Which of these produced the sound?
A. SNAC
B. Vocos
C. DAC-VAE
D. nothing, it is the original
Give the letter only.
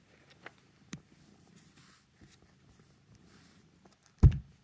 D